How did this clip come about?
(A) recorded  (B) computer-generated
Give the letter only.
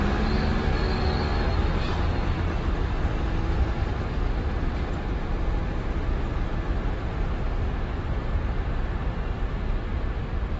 A